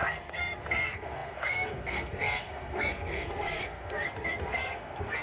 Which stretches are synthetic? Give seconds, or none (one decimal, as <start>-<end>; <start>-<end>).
0.0-5.2

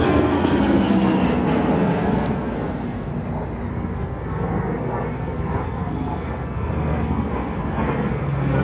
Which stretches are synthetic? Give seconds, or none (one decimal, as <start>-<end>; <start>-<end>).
0.0-3.1; 3.7-8.6

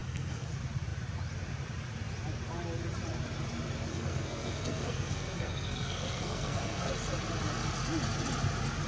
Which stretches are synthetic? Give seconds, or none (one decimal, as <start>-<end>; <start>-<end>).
0.0-0.5; 3.9-6.9